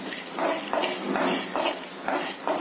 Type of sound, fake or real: real